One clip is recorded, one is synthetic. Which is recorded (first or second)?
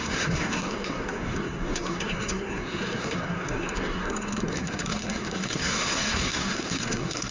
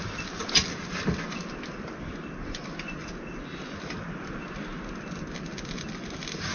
second